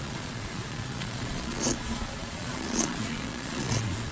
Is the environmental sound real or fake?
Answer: fake